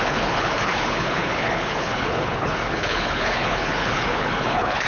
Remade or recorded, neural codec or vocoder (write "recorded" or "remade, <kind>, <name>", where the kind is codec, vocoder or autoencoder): remade, codec, HILCodec